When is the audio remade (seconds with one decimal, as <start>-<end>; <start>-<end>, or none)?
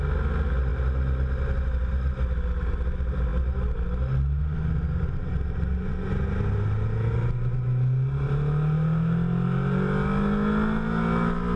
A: none